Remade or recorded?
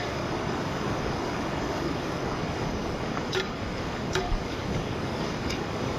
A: remade